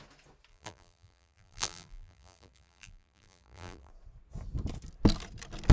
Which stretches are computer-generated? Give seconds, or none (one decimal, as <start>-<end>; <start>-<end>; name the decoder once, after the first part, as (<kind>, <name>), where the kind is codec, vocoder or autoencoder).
0.5-3.9 (vocoder, BigVGAN v2)